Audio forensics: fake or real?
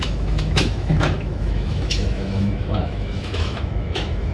fake